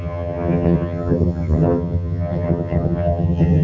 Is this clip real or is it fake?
fake